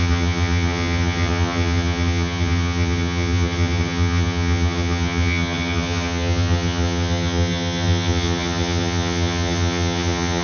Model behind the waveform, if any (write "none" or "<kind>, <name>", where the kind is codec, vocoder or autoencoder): vocoder, HiFi-GAN